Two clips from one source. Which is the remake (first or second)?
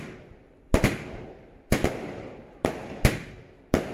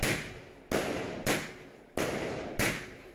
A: first